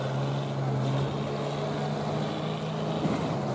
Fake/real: real